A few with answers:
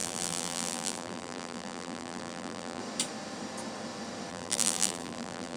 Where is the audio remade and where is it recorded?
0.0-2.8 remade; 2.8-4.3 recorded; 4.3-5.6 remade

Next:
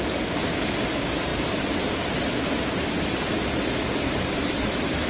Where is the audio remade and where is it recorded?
0.0-5.1 recorded

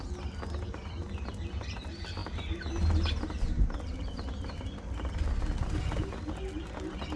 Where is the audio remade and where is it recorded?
0.0-7.2 recorded